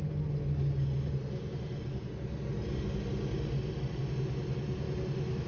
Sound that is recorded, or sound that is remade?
recorded